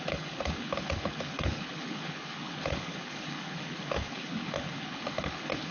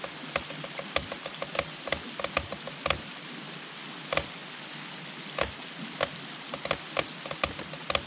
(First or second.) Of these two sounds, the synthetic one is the first